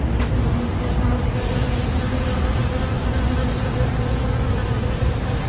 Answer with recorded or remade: recorded